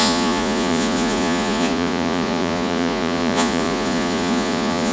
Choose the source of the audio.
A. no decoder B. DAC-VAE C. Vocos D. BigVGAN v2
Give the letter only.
C